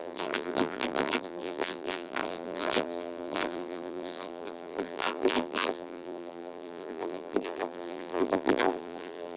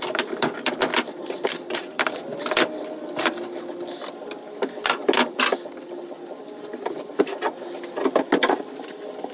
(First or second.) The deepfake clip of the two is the first